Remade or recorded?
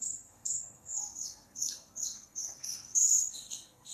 remade